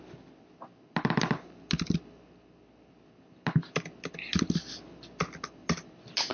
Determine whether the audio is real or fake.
real